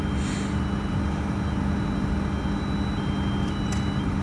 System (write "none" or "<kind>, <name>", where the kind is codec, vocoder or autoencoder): none